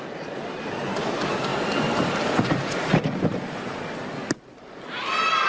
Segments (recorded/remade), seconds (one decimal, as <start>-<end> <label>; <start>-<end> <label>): 0.0-5.5 recorded